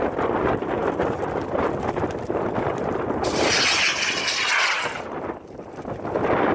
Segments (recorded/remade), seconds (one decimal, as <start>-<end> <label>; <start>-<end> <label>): 0.0-6.5 recorded